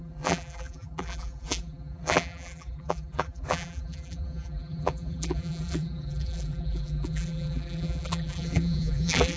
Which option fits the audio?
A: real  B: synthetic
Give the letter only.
B